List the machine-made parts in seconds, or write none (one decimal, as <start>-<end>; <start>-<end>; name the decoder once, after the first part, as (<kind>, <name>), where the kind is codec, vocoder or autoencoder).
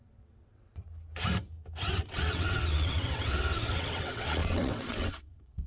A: 0.0-0.7 (vocoder, WaveNeXt); 1.9-5.7